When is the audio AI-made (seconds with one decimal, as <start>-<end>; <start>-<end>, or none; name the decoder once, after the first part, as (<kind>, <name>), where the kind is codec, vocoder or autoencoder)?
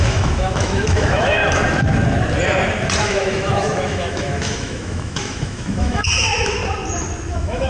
0.0-1.4 (autoencoder, DAC-VAE); 3.0-6.6; 7.3-7.7